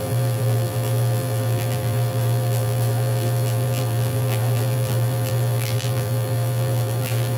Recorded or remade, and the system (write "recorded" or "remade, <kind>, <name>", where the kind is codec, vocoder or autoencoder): remade, vocoder, BigVGAN v2